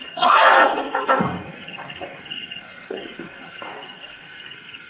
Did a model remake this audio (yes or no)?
yes